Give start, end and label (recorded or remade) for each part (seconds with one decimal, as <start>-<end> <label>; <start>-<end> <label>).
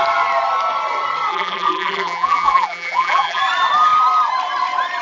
0.0-1.3 recorded; 1.3-3.4 remade; 3.4-5.0 recorded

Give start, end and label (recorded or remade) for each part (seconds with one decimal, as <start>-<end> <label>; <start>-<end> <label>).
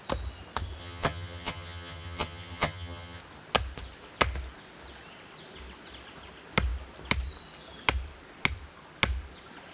0.0-0.8 recorded; 0.8-3.2 remade; 3.2-9.7 recorded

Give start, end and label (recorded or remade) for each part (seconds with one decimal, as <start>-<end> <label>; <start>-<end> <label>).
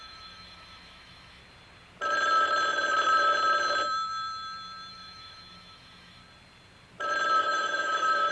0.0-1.4 remade; 1.4-4.9 recorded; 4.9-6.2 remade; 6.2-7.4 recorded; 7.4-8.3 remade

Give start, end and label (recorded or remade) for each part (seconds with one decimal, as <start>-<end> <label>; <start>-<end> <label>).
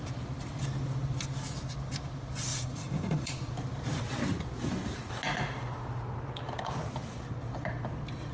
0.0-2.5 recorded; 2.5-3.5 remade; 3.5-8.3 recorded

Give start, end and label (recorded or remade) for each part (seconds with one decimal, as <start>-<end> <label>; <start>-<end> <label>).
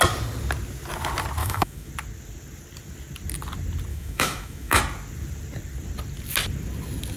0.0-1.4 recorded; 1.4-1.9 remade; 1.9-3.9 recorded; 3.9-4.8 remade; 4.8-7.2 recorded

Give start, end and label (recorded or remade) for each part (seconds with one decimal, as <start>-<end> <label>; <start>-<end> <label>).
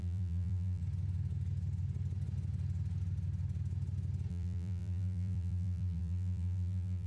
0.0-0.8 remade; 0.8-4.3 recorded; 4.3-7.1 remade